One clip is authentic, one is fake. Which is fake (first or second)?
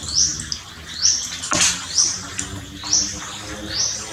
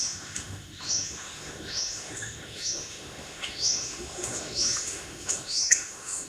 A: second